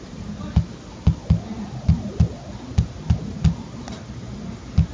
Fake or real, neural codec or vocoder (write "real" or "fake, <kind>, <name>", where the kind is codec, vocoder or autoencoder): real